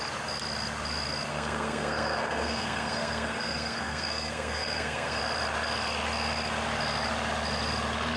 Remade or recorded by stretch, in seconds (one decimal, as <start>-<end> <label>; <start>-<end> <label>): 0.0-1.3 recorded; 1.3-5.2 remade; 5.2-8.2 recorded